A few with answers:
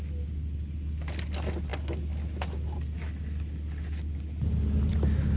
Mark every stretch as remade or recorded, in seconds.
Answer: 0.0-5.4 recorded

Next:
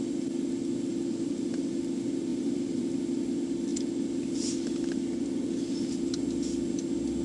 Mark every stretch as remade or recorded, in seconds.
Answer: 0.0-0.9 recorded; 0.9-1.8 remade; 1.8-2.3 recorded; 2.3-2.8 remade; 2.8-7.2 recorded

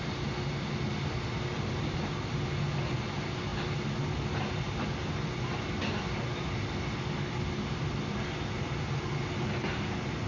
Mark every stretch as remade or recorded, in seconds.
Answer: 0.0-10.3 recorded

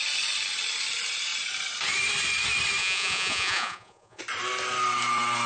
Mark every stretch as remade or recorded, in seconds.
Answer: 0.0-2.8 recorded; 2.8-4.2 remade; 4.2-5.5 recorded